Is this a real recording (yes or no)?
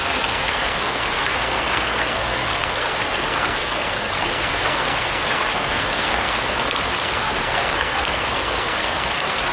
no